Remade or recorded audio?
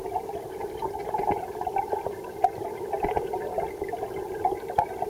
recorded